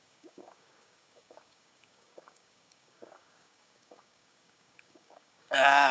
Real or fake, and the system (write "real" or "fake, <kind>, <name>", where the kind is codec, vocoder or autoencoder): fake, codec, DAC